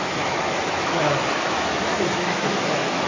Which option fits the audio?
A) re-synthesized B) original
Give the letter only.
A